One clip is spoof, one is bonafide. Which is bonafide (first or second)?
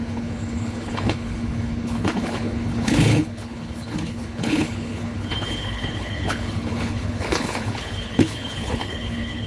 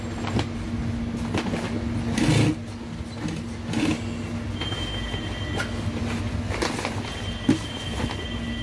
second